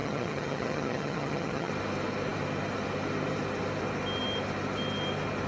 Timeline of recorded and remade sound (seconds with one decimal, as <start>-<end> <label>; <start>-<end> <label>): 0.0-1.7 remade; 1.7-5.5 recorded